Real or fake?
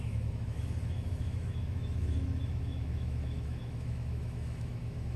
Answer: fake